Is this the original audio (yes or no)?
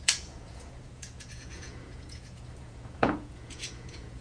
no